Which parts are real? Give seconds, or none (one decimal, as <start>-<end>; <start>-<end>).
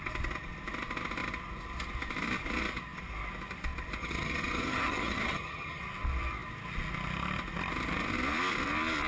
0.0-4.0; 5.8-9.1